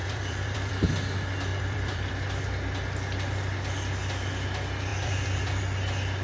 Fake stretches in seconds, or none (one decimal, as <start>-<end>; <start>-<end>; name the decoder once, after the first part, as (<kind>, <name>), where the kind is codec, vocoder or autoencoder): 0.0-0.7 (vocoder, BigVGAN v2); 1.5-2.1; 4.9-5.6